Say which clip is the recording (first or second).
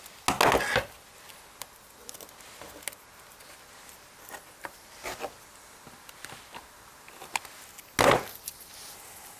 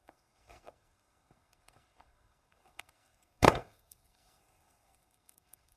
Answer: first